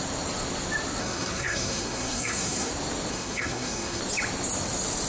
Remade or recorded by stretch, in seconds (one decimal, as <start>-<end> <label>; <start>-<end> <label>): 0.0-1.0 recorded; 1.0-2.7 remade; 2.7-3.1 recorded; 3.1-4.0 remade; 4.0-5.1 recorded